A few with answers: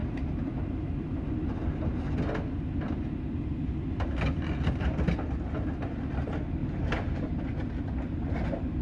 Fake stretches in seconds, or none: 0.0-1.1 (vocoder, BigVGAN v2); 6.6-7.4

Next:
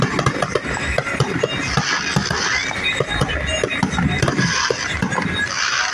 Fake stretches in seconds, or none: 2.2-5.9 (vocoder, BigVGAN v2)

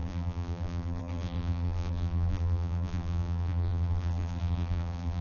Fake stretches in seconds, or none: 0.0-5.2 (vocoder, BigVGAN v2)

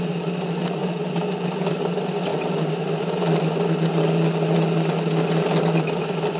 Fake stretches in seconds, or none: none

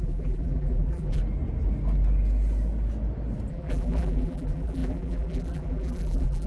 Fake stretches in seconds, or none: 0.0-1.2 (vocoder, BigVGAN v2); 3.5-6.5

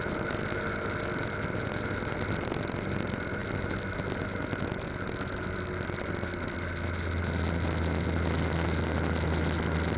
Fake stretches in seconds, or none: none

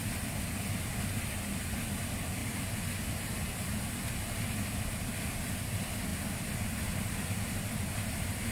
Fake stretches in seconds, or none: 2.4-3.4 (vocoder, BigVGAN v2)

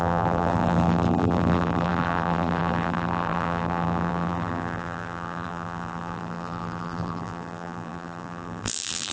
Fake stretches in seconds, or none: 0.0-9.1 (vocoder, BigVGAN v2)